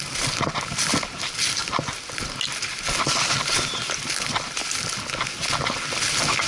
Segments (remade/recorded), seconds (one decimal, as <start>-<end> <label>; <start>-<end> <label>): 0.0-6.5 recorded